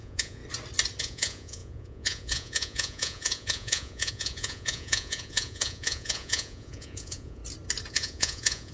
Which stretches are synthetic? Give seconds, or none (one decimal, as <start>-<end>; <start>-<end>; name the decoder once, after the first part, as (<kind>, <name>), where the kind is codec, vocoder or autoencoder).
0.0-0.4 (vocoder, Vocos); 1.0-7.4; 7.9-8.7